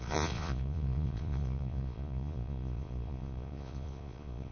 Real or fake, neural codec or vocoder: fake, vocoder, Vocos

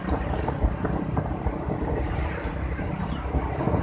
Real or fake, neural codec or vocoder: fake, vocoder, BigVGAN v2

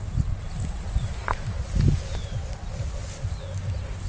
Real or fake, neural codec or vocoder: real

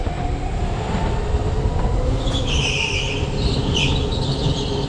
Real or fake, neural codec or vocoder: real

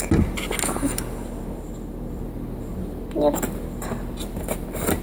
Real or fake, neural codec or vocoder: real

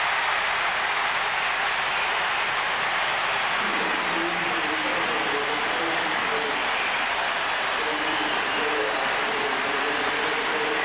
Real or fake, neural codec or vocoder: real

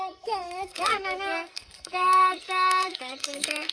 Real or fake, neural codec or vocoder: fake, codec, SNAC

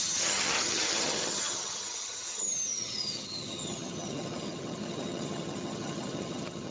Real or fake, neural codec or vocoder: fake, vocoder, HiFi-GAN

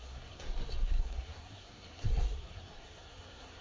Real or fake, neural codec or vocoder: fake, codec, SNAC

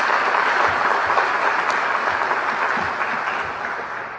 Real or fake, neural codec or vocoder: real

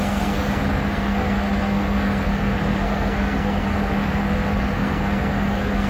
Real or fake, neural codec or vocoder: fake, codec, SNAC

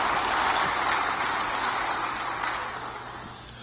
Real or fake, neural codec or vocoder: real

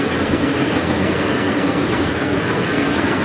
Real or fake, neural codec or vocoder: fake, codec, SNAC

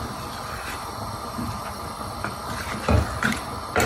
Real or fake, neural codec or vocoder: real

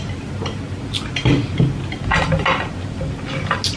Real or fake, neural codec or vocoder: real